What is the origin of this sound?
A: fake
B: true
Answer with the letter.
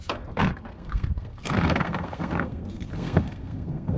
A